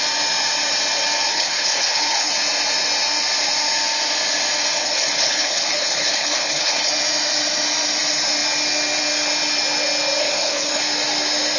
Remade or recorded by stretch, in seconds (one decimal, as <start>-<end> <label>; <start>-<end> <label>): 0.0-1.3 recorded; 1.3-2.3 remade; 2.3-4.8 recorded; 4.8-6.9 remade; 6.9-10.2 recorded; 10.2-10.8 remade; 10.8-11.6 recorded